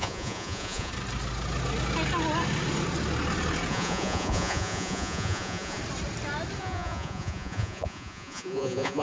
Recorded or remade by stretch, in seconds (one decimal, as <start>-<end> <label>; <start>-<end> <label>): 0.0-0.9 remade; 0.9-3.7 recorded; 3.7-5.8 remade; 5.8-6.6 recorded; 6.6-9.0 remade